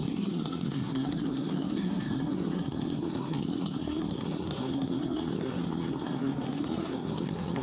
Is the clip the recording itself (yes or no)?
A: no